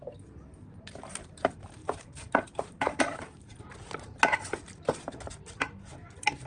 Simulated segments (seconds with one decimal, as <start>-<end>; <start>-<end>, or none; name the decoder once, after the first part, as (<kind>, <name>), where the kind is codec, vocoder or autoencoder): 1.8-3.6 (vocoder, BigVGAN v2)